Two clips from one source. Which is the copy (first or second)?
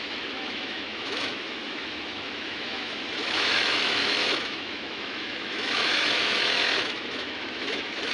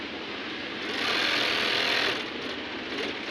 first